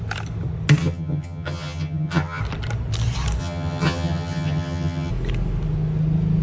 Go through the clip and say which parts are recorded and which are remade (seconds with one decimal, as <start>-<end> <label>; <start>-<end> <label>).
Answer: 0.0-0.8 recorded; 0.8-2.4 remade; 2.4-3.4 recorded; 3.4-5.1 remade; 5.1-6.4 recorded